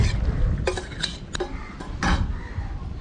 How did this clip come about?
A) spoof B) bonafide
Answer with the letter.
B